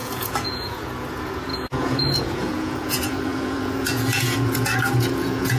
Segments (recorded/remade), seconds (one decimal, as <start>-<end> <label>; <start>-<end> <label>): 0.0-5.6 remade